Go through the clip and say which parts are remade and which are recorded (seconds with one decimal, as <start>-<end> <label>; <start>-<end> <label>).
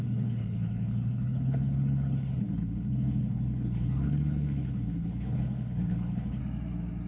0.0-6.4 remade; 6.4-7.1 recorded